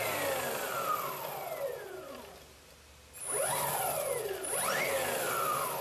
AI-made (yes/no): no